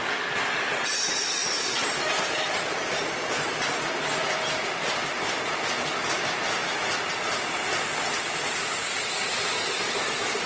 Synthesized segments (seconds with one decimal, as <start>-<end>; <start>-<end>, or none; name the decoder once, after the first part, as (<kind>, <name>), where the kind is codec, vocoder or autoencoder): none